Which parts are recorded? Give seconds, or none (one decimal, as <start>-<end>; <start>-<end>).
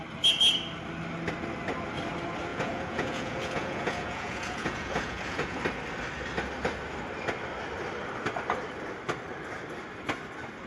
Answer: 0.0-2.5; 5.6-10.7